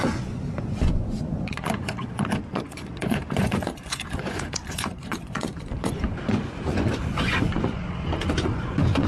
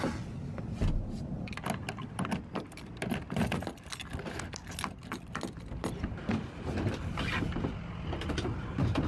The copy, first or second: first